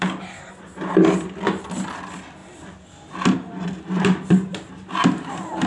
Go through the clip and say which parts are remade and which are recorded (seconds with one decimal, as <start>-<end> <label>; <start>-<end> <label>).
0.0-5.7 recorded